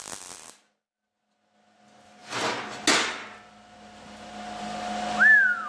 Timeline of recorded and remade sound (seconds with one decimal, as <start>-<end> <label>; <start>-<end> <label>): 0.0-5.7 recorded